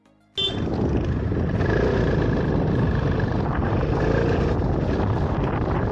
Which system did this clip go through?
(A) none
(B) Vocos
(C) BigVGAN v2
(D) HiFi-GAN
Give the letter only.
A